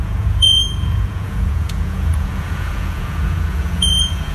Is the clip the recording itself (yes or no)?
no